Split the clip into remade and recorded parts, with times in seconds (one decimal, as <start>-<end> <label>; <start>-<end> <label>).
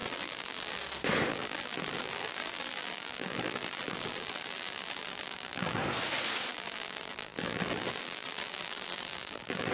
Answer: 0.0-0.8 remade; 0.8-1.3 recorded; 1.3-5.8 remade; 5.8-6.5 recorded; 6.5-9.7 remade